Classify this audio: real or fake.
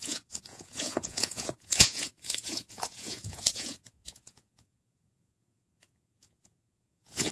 fake